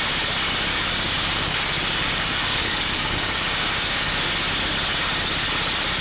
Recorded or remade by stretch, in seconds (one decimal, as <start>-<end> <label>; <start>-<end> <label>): 0.0-0.7 recorded; 0.7-4.3 remade; 4.3-6.0 recorded